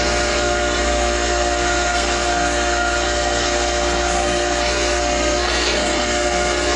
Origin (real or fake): fake